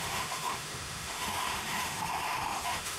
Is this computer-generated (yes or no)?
yes